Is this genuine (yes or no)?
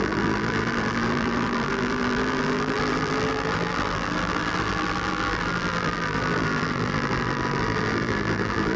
no